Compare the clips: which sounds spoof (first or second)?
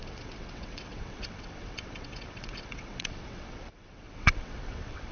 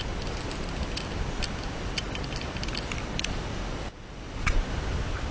first